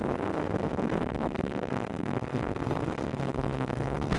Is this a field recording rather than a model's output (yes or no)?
no